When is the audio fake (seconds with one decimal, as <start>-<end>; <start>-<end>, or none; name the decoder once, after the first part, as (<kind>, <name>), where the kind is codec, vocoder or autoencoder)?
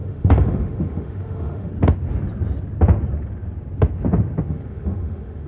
0.0-1.7 (autoencoder, DAC-VAE); 4.5-5.5